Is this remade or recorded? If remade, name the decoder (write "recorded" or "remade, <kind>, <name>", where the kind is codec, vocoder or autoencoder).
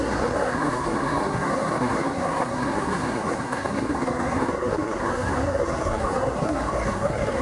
remade, codec, SNAC